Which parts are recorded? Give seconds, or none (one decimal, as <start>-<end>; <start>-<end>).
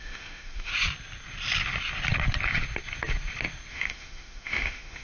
0.7-3.7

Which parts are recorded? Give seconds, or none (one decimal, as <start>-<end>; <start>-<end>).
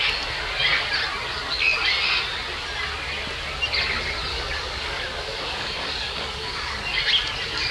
0.0-4.3; 7.0-7.7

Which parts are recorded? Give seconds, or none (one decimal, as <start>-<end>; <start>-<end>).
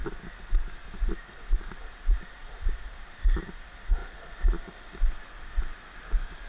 0.0-2.4; 3.4-6.5